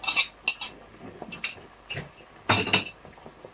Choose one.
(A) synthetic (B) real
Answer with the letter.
B